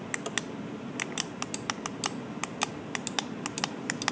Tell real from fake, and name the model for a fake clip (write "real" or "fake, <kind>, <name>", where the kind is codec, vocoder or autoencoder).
real